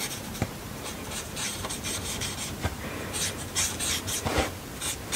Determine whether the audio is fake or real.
fake